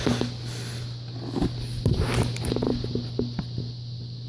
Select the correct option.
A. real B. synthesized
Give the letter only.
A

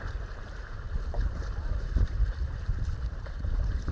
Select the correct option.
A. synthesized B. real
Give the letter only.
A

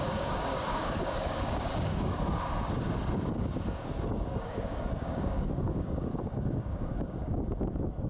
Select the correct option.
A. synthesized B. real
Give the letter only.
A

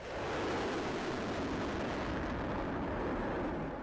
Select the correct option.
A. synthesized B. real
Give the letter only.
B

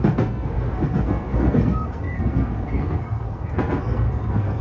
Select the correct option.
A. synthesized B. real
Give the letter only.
A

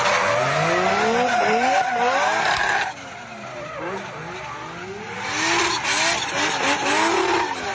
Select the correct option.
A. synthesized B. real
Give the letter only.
B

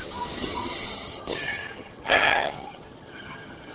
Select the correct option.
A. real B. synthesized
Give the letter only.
B